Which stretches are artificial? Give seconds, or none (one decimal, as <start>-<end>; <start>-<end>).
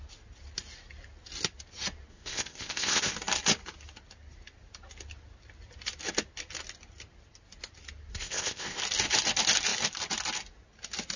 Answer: 2.1-3.1; 8.1-8.8